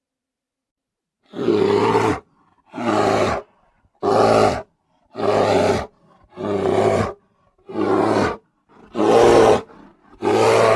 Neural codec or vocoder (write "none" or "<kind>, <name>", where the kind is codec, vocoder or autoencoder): none